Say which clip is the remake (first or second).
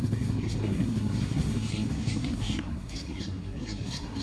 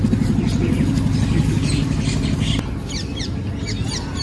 first